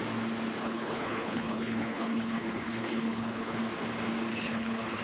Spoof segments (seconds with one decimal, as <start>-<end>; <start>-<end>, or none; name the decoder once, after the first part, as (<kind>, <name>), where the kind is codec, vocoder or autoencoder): 0.6-3.6 (codec, HILCodec); 4.3-5.0